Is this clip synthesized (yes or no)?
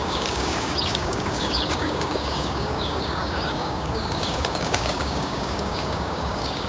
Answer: yes